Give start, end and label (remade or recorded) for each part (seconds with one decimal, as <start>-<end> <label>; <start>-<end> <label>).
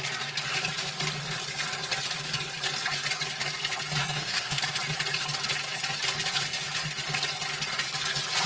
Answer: 0.0-4.0 recorded; 4.0-4.6 remade; 4.6-8.5 recorded